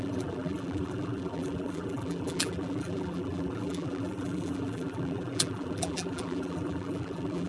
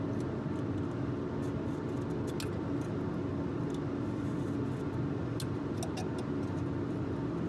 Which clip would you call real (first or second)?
second